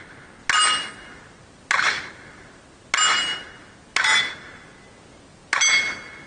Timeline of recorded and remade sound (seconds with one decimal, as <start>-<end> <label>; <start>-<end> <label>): 0.0-6.3 recorded

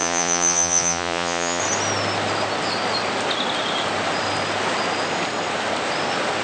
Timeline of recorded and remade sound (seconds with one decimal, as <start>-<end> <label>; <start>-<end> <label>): 0.0-1.6 remade; 1.6-6.4 recorded